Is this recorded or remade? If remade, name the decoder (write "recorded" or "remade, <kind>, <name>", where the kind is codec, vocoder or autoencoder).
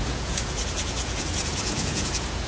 remade, vocoder, Vocos